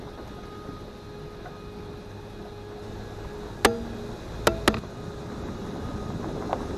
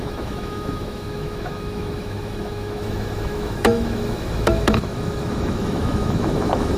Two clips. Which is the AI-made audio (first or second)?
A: second